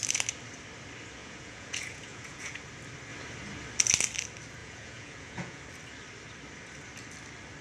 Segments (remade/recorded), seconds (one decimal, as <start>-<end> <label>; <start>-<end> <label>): 0.0-1.2 recorded; 1.2-2.6 remade; 2.6-4.6 recorded; 4.6-5.6 remade; 5.6-7.6 recorded